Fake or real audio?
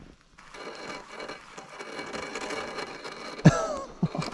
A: real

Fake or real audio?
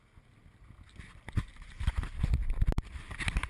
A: real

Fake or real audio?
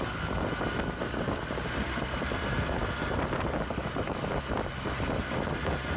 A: real